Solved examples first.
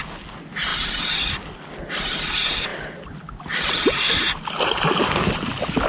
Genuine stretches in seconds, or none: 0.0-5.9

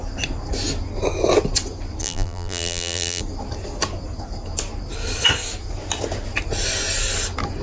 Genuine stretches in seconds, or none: 0.0-2.0; 3.2-7.6

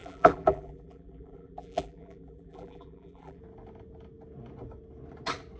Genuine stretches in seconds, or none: 3.4-5.6